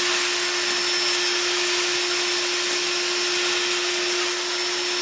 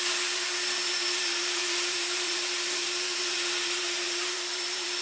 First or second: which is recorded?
first